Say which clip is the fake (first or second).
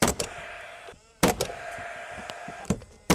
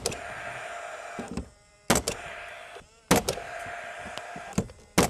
first